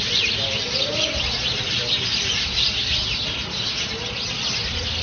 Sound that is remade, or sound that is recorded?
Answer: recorded